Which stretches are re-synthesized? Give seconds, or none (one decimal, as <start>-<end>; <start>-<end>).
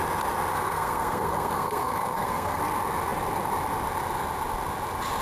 0.5-2.6